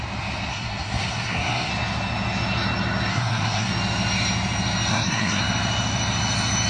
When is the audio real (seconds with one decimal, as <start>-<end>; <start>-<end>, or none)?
0.0-0.5; 1.7-3.1; 3.7-4.9; 5.4-6.7